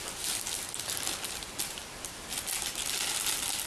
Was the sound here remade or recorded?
recorded